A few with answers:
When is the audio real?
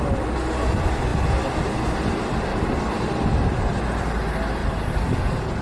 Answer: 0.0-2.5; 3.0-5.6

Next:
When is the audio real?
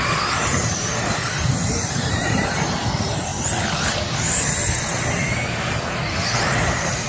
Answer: 3.3-5.6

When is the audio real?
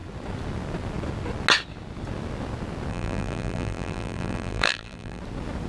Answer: 0.0-2.9; 5.2-5.7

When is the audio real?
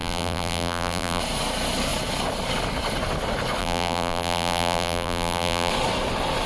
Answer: 1.2-3.6; 5.7-6.5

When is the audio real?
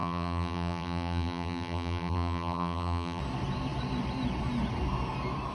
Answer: 3.2-5.5